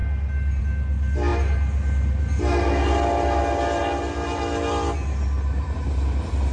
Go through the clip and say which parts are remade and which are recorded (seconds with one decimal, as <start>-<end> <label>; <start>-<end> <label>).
0.0-6.5 recorded